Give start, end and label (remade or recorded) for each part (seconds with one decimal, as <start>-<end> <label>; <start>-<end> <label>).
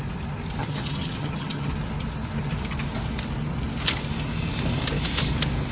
0.0-0.6 recorded; 0.6-1.7 remade; 1.7-5.7 recorded